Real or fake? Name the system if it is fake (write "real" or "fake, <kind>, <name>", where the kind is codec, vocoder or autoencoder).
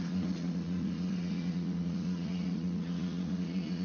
fake, vocoder, Vocos